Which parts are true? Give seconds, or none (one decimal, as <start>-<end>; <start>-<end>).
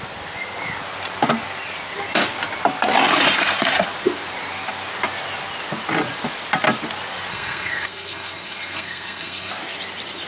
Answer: 0.0-7.3; 9.5-10.3